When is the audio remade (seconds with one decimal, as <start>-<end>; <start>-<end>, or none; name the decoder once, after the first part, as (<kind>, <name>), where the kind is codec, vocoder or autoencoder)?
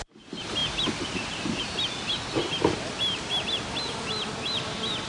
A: none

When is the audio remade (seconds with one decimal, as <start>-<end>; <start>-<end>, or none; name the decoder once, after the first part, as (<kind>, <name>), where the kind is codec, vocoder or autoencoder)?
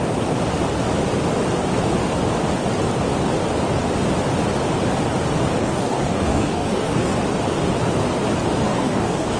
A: 5.6-7.2 (codec, DAC); 8.6-9.4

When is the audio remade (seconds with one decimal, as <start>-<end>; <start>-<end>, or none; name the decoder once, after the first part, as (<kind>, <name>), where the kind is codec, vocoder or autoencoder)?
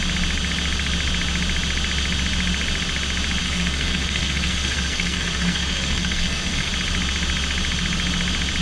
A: 3.4-6.7 (codec, SNAC)